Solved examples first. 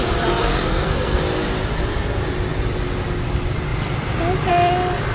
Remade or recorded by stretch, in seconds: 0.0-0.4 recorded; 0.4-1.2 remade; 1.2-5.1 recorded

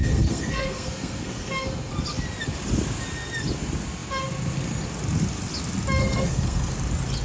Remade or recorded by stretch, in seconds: 0.0-1.9 remade; 1.9-6.0 recorded; 6.0-6.7 remade; 6.7-7.2 recorded

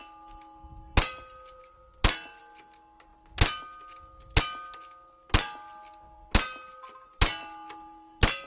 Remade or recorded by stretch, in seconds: 0.0-8.5 recorded

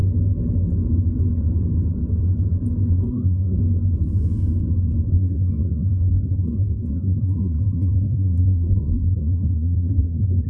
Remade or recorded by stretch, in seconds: 0.0-2.9 recorded; 2.9-3.6 remade; 3.6-5.1 recorded; 5.1-10.5 remade

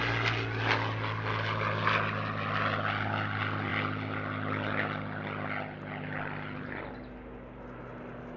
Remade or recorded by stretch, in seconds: 0.0-8.4 recorded

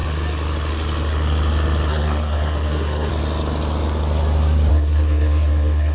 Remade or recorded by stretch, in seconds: 0.0-1.9 recorded; 1.9-3.1 remade; 3.1-4.7 recorded; 4.7-5.9 remade